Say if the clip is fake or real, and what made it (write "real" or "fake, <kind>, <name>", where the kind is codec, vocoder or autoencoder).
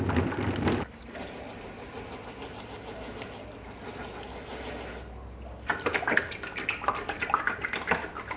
real